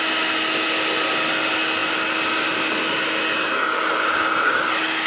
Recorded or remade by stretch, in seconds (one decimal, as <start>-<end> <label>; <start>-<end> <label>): 0.0-5.1 recorded